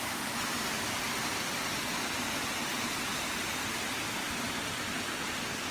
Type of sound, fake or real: real